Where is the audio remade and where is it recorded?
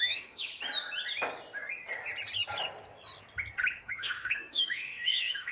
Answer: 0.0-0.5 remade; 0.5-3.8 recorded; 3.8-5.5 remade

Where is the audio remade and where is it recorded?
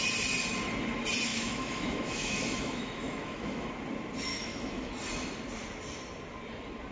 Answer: 0.0-1.3 recorded; 1.3-3.7 remade; 3.7-4.3 recorded; 4.3-4.9 remade; 4.9-6.9 recorded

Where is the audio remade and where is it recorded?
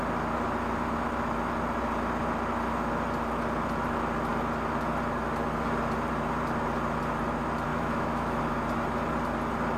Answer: 0.0-7.7 recorded; 7.7-8.4 remade; 8.4-9.8 recorded